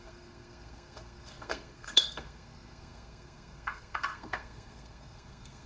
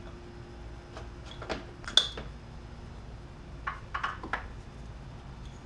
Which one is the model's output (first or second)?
first